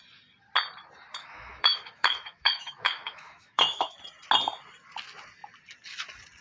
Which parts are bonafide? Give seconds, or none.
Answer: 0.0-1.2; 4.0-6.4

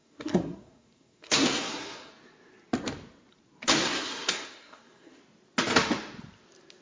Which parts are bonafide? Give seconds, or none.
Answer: 2.1-3.8; 5.2-6.8

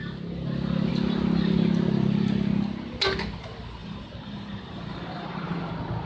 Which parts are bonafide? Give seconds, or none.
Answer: 0.0-3.8; 5.6-6.1

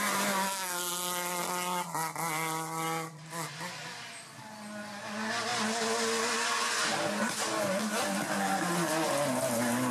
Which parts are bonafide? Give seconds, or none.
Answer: 0.0-9.9

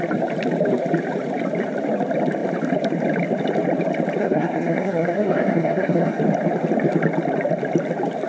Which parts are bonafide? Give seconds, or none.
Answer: 0.0-4.2; 6.2-8.3

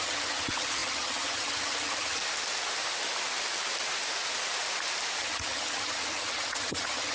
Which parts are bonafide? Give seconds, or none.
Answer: 2.2-5.2

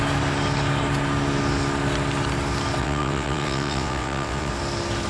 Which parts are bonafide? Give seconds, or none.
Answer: 0.0-2.8; 4.5-5.1

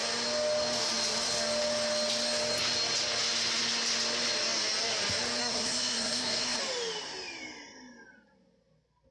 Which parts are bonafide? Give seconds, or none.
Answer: 0.0-5.4; 6.6-9.1